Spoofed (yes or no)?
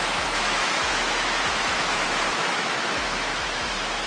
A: yes